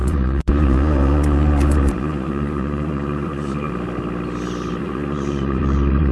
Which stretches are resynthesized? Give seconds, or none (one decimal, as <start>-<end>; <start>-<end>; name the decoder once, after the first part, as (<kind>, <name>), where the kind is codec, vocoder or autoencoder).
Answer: 0.0-3.7 (vocoder, Vocos); 4.8-6.1